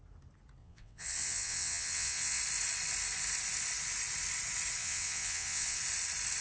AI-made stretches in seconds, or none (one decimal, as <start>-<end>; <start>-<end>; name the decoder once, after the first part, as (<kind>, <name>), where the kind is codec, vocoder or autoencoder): 0.6-2.4 (vocoder, WaveNeXt); 4.8-5.8